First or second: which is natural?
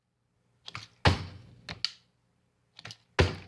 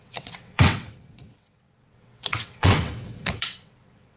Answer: first